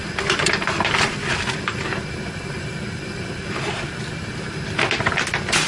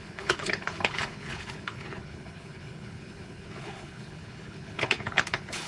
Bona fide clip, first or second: first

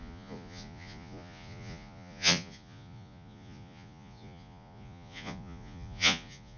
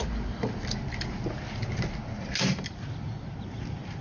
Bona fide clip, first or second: second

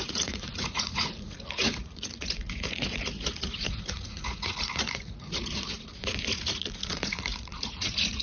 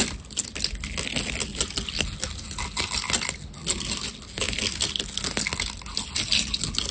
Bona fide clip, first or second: second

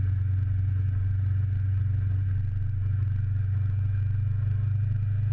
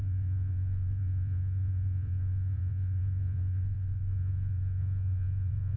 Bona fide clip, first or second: first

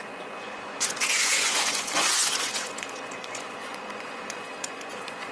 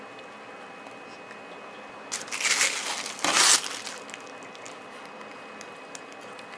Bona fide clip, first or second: second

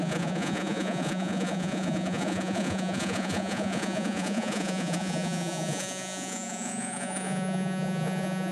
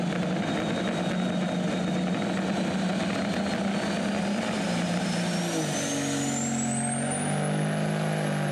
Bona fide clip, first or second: second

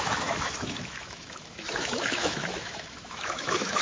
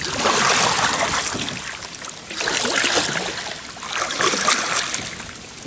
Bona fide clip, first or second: second